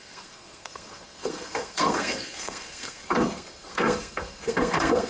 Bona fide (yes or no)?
no